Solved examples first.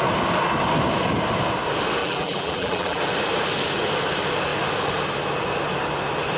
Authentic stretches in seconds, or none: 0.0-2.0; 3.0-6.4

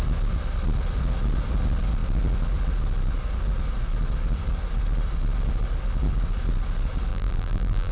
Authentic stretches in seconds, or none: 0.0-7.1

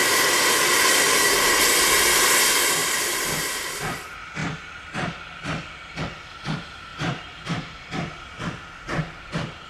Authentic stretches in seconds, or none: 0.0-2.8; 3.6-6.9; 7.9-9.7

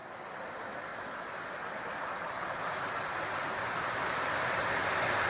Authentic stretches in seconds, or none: 0.0-0.5; 0.9-3.6

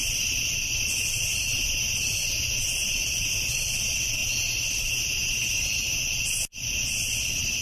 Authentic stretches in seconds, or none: 0.0-1.3; 3.8-4.2; 6.0-7.6

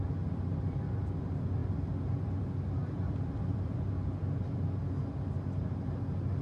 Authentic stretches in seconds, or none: 0.0-0.5; 1.2-2.8; 3.9-6.4